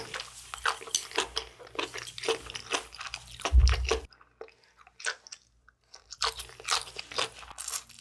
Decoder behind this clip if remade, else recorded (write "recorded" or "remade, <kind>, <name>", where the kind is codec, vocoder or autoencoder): recorded